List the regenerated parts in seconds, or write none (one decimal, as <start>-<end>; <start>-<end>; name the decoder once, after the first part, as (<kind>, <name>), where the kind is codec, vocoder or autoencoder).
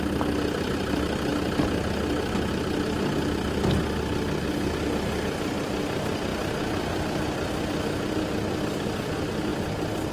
none